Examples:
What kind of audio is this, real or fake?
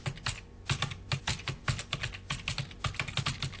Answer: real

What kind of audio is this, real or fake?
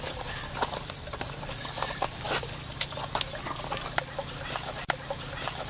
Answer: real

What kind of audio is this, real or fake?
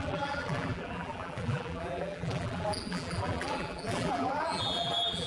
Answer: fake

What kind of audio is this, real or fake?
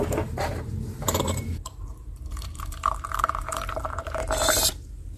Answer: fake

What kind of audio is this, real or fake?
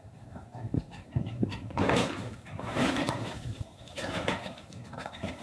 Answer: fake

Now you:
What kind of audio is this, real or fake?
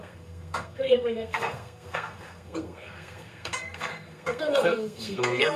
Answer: fake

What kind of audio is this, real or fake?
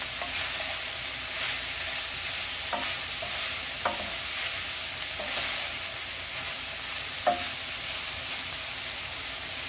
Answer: real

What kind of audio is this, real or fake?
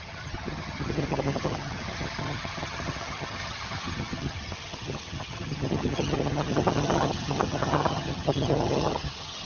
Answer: fake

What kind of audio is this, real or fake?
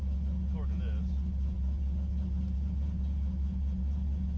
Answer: real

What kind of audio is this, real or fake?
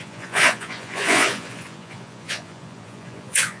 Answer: fake